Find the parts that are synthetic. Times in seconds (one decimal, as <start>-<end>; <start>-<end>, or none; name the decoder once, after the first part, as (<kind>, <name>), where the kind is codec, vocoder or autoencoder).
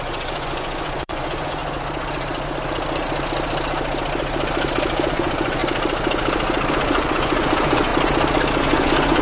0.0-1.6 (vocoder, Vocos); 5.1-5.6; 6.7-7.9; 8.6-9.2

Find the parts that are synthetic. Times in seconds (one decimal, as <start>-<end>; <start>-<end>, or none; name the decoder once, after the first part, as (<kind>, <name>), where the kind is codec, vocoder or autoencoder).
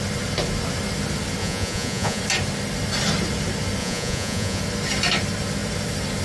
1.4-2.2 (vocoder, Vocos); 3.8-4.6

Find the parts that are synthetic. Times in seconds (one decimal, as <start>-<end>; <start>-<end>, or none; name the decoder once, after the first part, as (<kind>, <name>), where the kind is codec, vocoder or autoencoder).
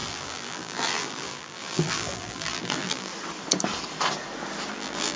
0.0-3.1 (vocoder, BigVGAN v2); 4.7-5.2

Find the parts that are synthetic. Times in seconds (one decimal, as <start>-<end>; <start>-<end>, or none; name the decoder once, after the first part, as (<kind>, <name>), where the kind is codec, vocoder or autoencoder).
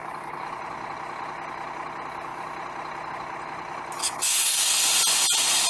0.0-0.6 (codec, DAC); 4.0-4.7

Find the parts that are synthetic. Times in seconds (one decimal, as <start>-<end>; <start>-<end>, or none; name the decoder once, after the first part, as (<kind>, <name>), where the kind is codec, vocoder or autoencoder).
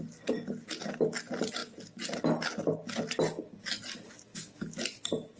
4.3-4.8 (autoencoder, DAC-VAE)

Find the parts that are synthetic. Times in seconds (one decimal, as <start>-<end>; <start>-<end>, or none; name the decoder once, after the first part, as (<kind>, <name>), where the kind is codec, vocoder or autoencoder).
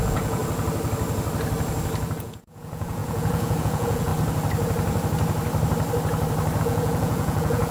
0.0-0.4 (vocoder, Vocos); 2.2-4.1; 6.6-7.7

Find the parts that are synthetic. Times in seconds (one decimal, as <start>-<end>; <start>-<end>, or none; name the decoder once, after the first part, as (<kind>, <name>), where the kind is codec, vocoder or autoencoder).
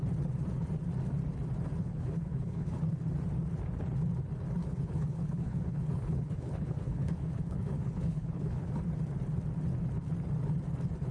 1.8-2.8 (codec, HILCodec); 4.6-8.7